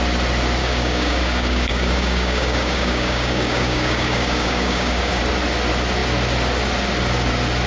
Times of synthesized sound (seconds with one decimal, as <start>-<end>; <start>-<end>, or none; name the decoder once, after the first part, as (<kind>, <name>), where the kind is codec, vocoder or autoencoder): 0.6-5.2 (codec, DAC)